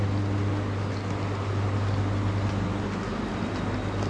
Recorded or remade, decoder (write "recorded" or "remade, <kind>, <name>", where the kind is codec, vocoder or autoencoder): recorded